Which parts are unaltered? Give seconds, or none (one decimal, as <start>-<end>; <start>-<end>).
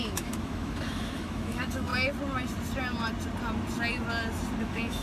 1.9-4.6